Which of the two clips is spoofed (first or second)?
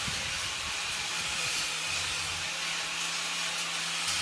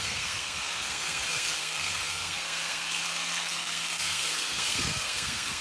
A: second